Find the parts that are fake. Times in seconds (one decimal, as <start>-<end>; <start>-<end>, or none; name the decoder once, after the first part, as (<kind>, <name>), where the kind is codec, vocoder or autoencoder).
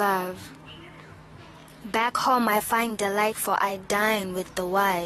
0.0-3.7 (autoencoder, DAC-VAE); 4.2-5.1